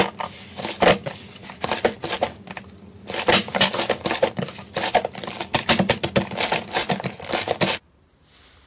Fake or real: real